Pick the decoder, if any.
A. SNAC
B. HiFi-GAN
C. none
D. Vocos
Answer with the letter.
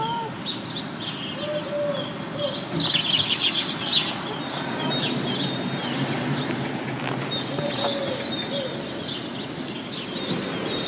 C